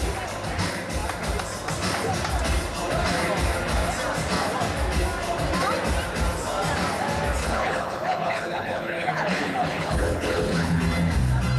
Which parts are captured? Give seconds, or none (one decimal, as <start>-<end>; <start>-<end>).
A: 0.0-7.4; 10.8-11.6